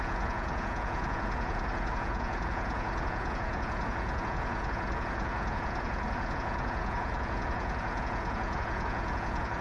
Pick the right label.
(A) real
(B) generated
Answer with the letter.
B